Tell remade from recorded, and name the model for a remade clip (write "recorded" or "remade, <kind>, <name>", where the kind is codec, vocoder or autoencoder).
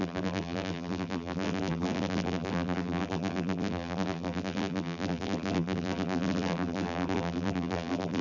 remade, vocoder, BigVGAN v2